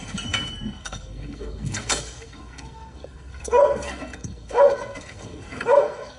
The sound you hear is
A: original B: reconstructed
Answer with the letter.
B